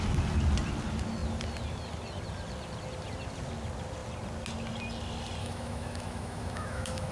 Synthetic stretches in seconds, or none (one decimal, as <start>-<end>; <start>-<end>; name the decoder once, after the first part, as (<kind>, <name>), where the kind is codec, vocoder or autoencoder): 5.4-7.1 (autoencoder, DAC-VAE)